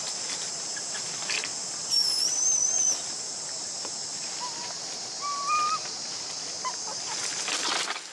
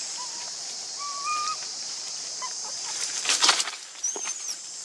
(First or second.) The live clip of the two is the first